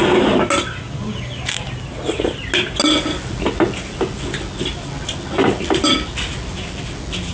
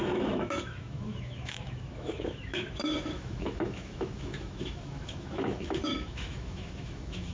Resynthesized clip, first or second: second